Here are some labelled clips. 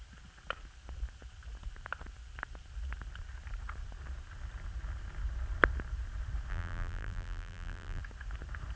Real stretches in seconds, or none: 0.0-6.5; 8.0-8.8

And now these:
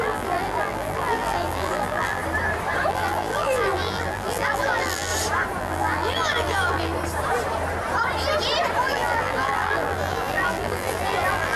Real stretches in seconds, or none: 2.2-2.9; 5.1-5.6; 6.9-8.8

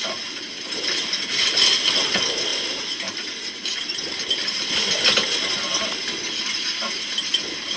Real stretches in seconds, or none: 0.0-2.5; 3.1-7.8

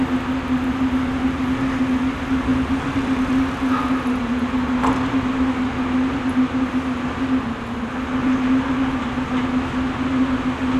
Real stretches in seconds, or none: 0.0-2.5; 3.4-8.2; 8.8-10.8

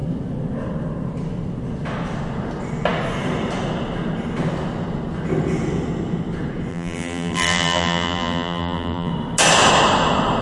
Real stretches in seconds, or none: 0.0-6.7; 9.1-10.4

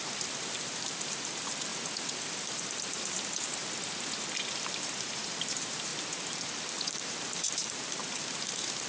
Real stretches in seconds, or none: 1.7-2.5; 3.6-5.5; 5.9-6.7